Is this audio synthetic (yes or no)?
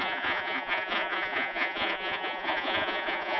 yes